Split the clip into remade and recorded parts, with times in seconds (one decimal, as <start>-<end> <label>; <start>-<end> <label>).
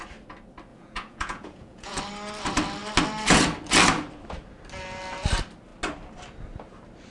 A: 0.0-0.7 recorded; 0.7-2.0 remade; 2.0-7.1 recorded